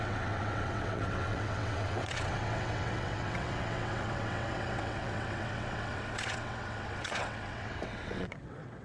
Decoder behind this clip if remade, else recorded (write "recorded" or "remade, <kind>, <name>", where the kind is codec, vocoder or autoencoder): remade, vocoder, WaveNeXt